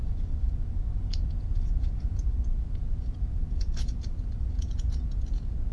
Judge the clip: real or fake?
fake